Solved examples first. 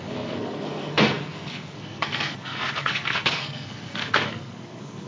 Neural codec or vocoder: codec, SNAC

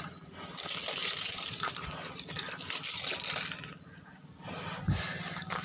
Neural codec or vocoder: none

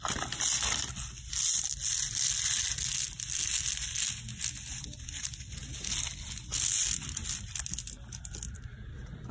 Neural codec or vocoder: none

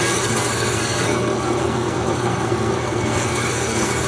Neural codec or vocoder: codec, SNAC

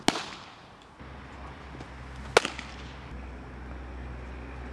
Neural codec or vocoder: none